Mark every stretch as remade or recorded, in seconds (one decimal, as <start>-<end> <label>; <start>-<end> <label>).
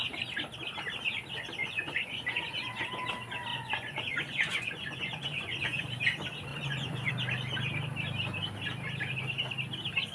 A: 0.0-1.6 recorded; 1.6-3.1 remade; 3.1-3.5 recorded; 3.5-5.8 remade; 5.8-6.5 recorded; 6.5-7.1 remade; 7.1-10.1 recorded